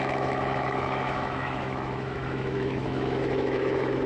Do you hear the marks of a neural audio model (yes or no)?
yes